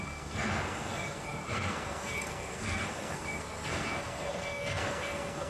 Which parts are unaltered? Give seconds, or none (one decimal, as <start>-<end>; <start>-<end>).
none